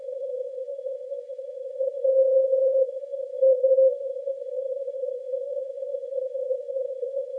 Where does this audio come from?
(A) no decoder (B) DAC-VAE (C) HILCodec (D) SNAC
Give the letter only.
B